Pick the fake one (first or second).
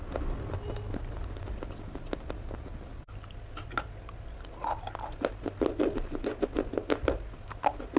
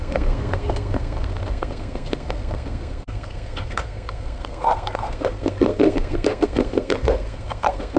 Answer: second